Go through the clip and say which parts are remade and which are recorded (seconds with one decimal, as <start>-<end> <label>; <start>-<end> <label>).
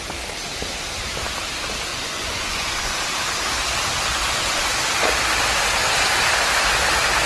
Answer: 0.0-1.9 recorded; 1.9-3.0 remade; 3.0-4.1 recorded; 4.1-4.6 remade; 4.6-7.3 recorded